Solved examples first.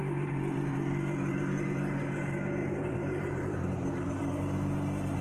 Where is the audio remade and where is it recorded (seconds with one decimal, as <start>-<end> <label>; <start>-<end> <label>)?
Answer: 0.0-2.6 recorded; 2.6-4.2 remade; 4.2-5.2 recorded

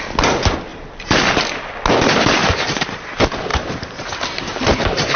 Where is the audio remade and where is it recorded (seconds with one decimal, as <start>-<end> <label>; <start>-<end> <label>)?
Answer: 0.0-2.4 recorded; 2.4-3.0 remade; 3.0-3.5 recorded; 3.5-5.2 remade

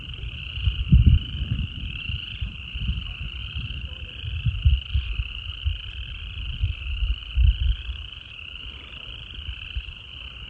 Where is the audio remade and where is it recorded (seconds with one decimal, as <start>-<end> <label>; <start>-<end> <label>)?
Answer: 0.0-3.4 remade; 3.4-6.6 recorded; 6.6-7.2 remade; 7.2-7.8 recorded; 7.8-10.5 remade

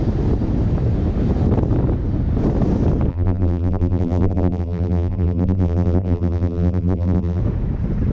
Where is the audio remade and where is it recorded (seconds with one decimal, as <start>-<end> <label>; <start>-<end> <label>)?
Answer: 0.0-3.1 recorded; 3.1-7.4 remade; 7.4-8.1 recorded

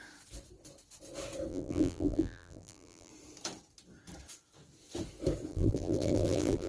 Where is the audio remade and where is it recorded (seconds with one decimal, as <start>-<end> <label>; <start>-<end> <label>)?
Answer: 0.0-1.5 recorded; 1.5-3.1 remade; 3.1-5.5 recorded; 5.5-6.7 remade

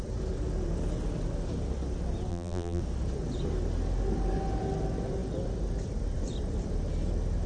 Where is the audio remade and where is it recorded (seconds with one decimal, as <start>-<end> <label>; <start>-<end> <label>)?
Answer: 0.0-2.3 recorded; 2.3-2.8 remade; 2.8-7.5 recorded

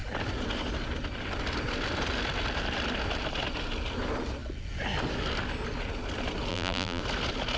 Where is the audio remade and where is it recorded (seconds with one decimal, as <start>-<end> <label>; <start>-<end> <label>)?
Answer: 0.0-6.5 recorded; 6.5-7.0 remade; 7.0-7.6 recorded